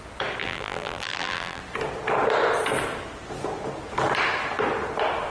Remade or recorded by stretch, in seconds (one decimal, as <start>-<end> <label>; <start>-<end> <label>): 0.0-0.4 recorded; 0.4-1.6 remade; 1.6-5.3 recorded